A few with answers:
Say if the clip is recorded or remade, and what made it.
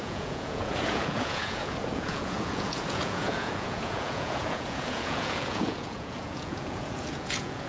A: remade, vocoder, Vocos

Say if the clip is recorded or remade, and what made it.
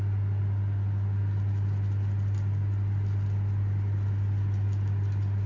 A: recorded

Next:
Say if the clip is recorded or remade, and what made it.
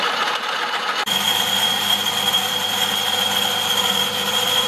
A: remade, vocoder, BigVGAN v2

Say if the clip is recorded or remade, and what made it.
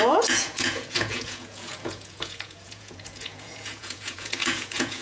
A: remade, vocoder, Vocos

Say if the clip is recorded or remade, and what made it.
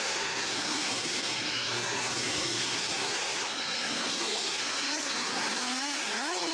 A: remade, codec, SNAC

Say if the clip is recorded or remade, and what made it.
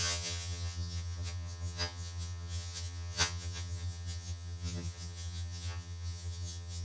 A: remade, vocoder, HiFi-GAN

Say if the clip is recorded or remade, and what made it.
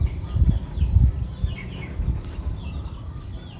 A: recorded